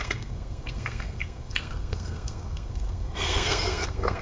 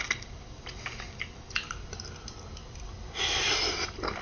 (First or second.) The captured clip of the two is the second